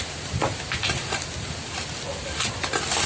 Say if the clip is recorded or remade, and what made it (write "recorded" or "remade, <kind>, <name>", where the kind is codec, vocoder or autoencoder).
recorded